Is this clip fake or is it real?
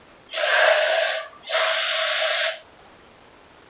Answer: real